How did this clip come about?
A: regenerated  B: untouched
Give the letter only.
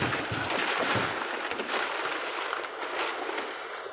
B